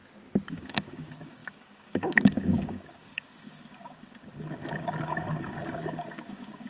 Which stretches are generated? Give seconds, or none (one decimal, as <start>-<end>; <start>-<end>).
0.5-6.7